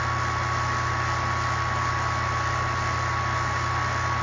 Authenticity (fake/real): real